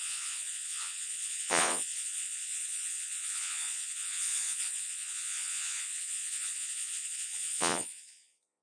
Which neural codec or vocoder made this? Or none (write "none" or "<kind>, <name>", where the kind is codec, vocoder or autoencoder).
vocoder, Vocos